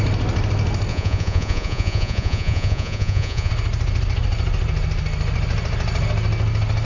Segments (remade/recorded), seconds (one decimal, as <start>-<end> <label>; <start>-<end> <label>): 0.0-0.9 recorded; 0.9-3.5 remade; 3.5-6.8 recorded